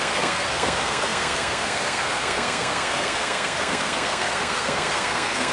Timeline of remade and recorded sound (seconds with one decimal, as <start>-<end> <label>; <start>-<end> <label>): 0.0-5.5 remade